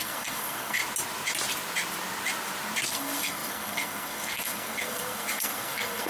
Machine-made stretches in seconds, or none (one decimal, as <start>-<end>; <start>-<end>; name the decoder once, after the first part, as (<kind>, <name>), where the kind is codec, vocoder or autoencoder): 0.0-0.8 (codec, SNAC); 2.9-6.1